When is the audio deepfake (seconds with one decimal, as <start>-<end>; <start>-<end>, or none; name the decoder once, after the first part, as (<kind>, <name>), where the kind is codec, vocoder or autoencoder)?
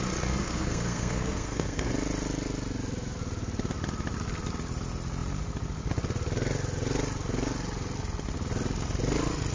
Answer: 0.4-1.9 (codec, SNAC)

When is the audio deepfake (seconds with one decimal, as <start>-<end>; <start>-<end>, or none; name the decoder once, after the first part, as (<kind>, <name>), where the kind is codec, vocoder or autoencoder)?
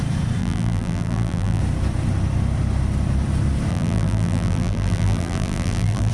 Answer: 0.4-1.6 (vocoder, BigVGAN v2); 3.7-6.1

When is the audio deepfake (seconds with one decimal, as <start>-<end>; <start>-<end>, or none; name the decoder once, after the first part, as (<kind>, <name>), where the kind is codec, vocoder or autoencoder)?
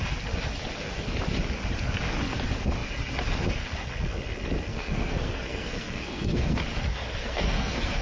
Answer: 4.7-6.6 (codec, SNAC); 7.2-8.0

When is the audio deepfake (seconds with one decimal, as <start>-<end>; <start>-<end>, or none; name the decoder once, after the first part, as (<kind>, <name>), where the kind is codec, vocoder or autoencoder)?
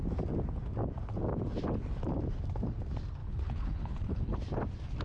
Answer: 3.2-4.4 (codec, HILCodec)